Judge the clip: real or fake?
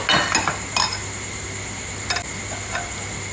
real